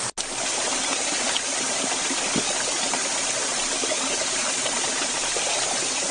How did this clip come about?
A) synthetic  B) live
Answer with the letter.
B